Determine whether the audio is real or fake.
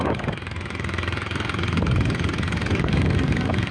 fake